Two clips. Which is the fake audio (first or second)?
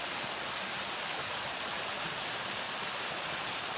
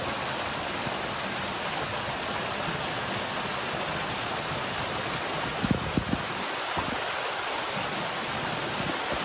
first